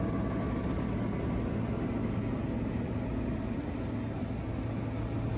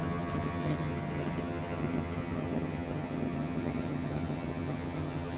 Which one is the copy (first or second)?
second